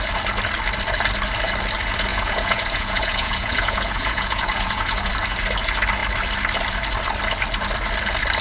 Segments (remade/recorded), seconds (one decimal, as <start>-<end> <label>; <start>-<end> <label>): 0.0-2.1 recorded; 2.1-5.1 remade; 5.1-8.4 recorded